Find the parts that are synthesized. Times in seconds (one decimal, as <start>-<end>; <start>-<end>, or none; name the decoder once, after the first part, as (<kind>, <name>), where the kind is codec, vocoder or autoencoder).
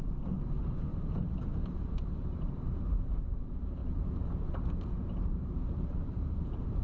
0.9-1.8 (vocoder, BigVGAN v2); 2.2-3.1; 3.8-6.8